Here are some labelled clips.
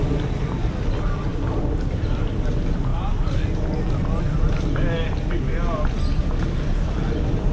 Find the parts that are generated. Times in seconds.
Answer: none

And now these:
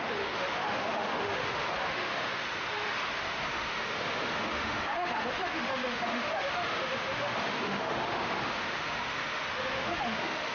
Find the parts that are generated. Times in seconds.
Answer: 0.0-10.5 (autoencoder, DAC-VAE)